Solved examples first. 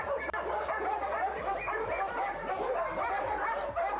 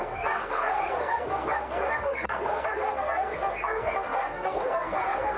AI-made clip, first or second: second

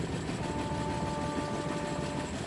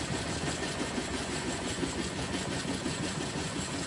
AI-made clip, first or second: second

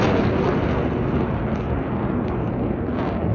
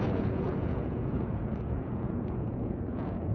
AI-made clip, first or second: second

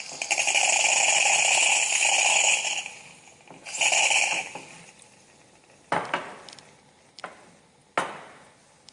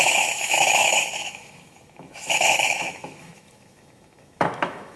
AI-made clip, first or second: second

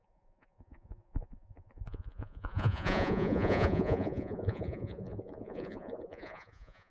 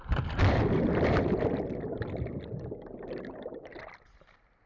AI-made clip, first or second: first